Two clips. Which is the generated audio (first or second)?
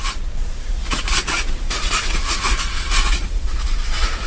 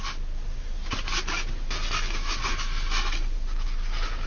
first